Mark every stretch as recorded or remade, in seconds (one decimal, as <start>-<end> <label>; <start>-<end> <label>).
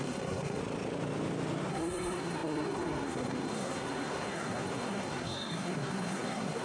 0.0-0.6 remade; 0.6-1.7 recorded; 1.7-6.6 remade